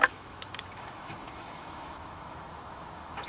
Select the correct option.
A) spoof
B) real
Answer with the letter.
A